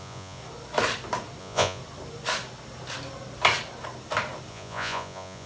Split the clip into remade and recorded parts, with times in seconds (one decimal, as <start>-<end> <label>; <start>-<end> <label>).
0.0-0.4 remade; 0.4-1.4 recorded; 1.4-1.8 remade; 1.8-4.5 recorded; 4.5-5.5 remade